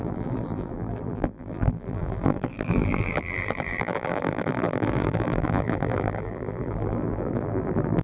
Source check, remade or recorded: remade